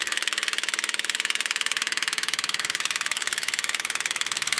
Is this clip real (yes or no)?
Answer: no